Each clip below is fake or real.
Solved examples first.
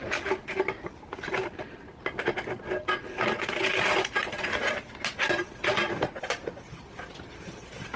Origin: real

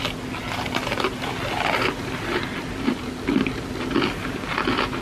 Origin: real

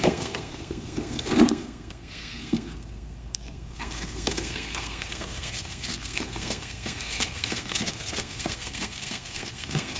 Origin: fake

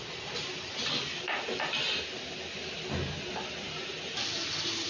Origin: real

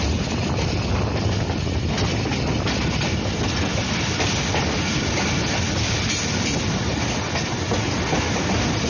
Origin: real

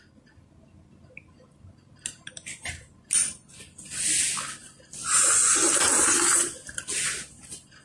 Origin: real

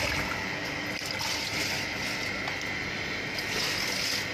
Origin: real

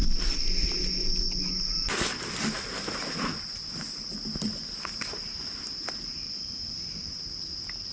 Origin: real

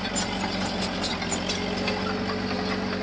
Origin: real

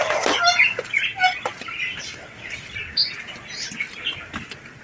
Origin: real